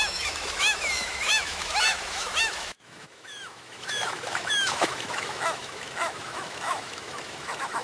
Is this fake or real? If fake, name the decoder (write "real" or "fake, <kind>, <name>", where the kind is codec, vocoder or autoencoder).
fake, autoencoder, DAC-VAE